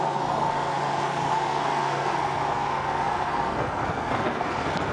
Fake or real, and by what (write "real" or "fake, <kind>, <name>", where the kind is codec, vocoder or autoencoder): fake, codec, SNAC